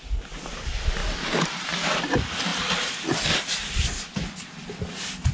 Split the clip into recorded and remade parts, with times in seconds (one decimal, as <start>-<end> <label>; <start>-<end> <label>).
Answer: 0.0-5.3 recorded